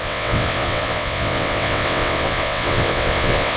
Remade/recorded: remade